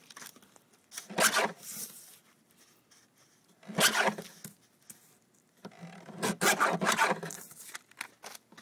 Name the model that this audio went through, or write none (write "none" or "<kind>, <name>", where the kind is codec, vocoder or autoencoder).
none